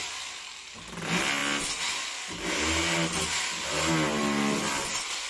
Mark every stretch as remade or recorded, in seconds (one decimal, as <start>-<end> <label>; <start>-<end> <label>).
0.0-5.3 recorded